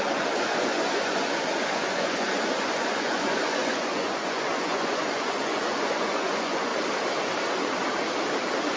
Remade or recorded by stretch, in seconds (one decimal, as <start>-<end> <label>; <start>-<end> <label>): 0.0-6.7 remade; 6.7-8.8 recorded